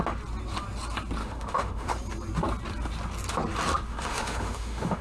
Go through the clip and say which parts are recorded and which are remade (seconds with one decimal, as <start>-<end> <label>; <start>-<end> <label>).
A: 0.0-1.2 recorded; 1.2-1.9 remade; 1.9-3.9 recorded; 3.9-5.0 remade